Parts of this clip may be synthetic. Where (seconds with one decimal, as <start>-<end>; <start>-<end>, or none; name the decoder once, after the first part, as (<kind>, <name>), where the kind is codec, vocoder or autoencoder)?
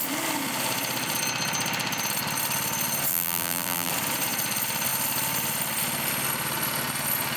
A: 3.1-3.9 (vocoder, BigVGAN v2)